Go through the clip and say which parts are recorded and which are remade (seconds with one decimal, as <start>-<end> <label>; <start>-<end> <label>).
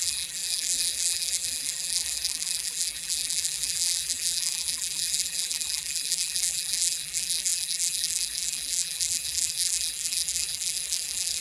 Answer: 0.0-11.4 remade